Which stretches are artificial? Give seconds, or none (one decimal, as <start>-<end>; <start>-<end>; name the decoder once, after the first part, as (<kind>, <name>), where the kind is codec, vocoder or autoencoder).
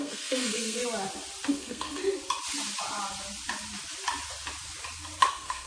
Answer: 0.0-0.8 (codec, SNAC); 1.5-2.0; 5.3-5.7